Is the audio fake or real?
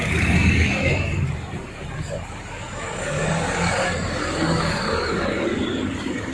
fake